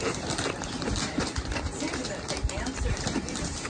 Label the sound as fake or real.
fake